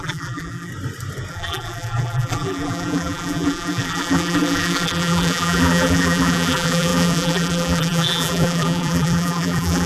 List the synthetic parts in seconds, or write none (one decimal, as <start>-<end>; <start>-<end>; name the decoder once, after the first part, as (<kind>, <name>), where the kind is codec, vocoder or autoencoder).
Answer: 0.0-0.7 (vocoder, BigVGAN v2); 1.3-9.9